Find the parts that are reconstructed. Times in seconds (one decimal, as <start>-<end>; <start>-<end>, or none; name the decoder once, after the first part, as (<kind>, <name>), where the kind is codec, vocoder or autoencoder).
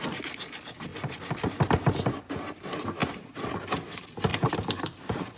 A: 4.3-5.4 (vocoder, BigVGAN v2)